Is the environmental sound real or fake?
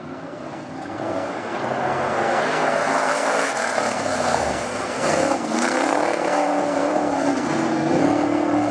fake